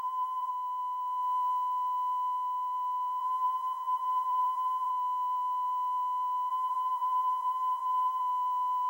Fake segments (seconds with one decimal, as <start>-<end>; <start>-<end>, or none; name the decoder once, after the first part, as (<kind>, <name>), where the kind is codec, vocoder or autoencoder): 0.0-0.5 (vocoder, BigVGAN v2); 3.2-4.9; 6.5-8.2